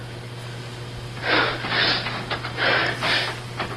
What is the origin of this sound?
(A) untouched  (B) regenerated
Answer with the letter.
A